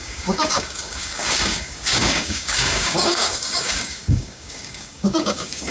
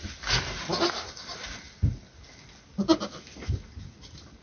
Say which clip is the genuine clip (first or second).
second